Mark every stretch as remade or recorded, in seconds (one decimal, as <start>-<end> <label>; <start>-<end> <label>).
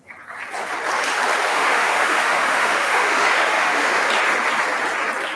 0.0-1.5 recorded; 1.5-4.1 remade; 4.1-5.4 recorded